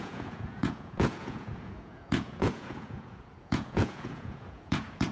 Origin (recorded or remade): remade